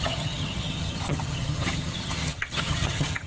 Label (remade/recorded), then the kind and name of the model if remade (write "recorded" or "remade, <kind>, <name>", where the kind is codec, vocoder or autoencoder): remade, vocoder, HiFi-GAN